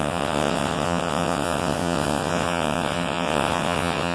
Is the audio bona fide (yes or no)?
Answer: no